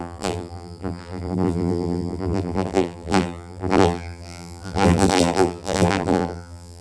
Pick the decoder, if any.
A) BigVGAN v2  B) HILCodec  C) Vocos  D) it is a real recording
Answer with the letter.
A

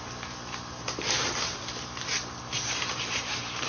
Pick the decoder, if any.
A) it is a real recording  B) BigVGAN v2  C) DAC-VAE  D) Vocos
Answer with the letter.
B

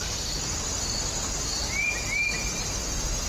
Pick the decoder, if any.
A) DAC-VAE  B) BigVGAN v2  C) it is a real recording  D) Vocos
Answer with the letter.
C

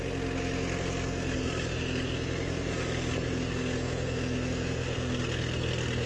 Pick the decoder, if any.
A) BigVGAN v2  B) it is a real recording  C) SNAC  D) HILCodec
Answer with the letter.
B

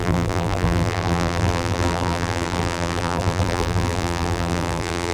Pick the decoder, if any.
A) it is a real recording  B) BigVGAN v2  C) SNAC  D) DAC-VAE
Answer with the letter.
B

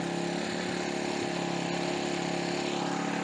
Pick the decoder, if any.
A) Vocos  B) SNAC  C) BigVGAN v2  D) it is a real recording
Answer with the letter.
D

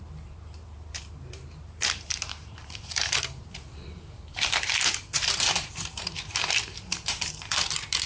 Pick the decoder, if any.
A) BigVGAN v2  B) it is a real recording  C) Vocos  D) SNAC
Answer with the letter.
A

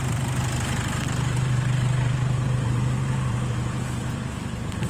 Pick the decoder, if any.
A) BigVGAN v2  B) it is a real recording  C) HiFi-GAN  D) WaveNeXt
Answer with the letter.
A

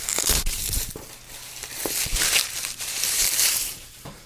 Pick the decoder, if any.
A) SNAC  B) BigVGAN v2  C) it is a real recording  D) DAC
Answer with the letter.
B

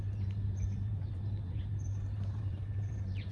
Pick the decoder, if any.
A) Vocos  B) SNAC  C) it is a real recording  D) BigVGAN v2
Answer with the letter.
D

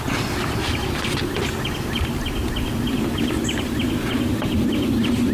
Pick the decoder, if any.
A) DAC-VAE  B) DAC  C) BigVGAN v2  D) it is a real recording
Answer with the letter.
D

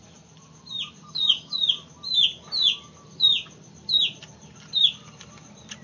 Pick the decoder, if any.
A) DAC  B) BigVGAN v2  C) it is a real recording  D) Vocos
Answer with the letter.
C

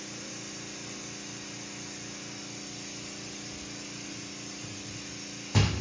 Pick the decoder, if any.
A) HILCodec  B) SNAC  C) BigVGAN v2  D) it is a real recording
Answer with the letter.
D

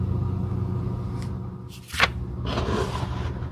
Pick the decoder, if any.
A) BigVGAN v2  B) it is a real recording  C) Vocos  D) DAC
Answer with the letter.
B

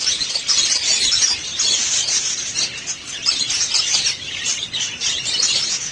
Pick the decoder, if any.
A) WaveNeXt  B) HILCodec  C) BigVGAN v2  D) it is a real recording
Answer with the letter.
D